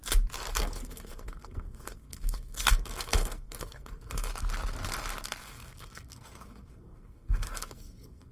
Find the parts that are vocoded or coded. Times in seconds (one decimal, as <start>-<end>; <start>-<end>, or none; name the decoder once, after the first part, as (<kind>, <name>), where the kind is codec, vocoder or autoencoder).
0.6-4.3 (codec, SNAC); 5.4-8.3